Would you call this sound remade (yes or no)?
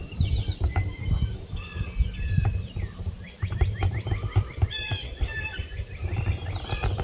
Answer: yes